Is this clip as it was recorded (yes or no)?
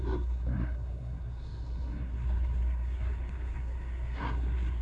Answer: no